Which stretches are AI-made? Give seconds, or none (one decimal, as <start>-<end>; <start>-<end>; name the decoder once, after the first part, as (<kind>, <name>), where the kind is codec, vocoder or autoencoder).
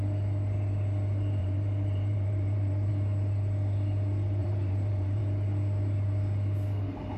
1.4-2.9 (vocoder, BigVGAN v2); 4.4-5.2